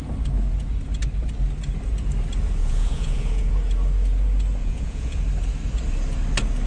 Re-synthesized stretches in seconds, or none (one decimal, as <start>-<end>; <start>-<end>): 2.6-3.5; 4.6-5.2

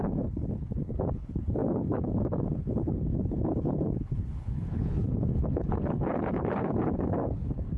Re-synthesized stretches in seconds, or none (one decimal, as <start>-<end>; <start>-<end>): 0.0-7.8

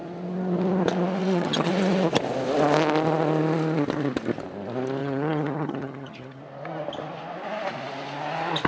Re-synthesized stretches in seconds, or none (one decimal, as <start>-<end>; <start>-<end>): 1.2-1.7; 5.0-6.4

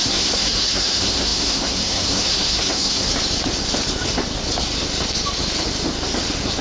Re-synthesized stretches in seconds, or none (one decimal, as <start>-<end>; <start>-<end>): 0.0-3.1

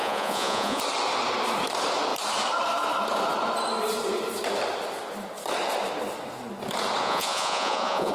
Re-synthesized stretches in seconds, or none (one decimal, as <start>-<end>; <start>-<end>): 0.0-0.8; 7.0-8.1

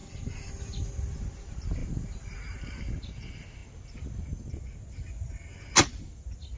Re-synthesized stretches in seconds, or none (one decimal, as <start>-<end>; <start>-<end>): none

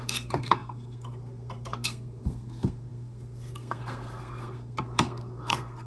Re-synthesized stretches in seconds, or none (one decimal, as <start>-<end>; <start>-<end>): 0.0-5.9

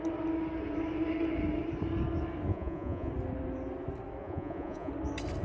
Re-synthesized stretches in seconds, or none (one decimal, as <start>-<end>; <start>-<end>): 2.5-3.1; 4.2-4.9